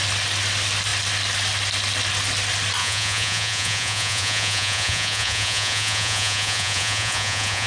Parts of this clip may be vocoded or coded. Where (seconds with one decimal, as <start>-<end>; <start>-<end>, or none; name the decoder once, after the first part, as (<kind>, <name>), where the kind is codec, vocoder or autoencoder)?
2.8-7.7 (vocoder, Vocos)